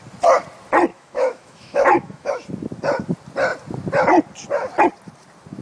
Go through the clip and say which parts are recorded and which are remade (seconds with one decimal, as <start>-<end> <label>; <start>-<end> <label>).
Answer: 0.0-0.9 recorded; 0.9-2.3 remade; 2.3-5.6 recorded